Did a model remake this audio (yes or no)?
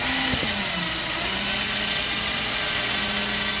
no